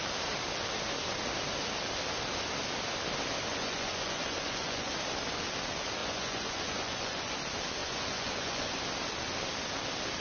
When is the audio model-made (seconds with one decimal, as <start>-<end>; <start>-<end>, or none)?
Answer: 3.5-4.9; 6.0-7.3; 7.8-8.8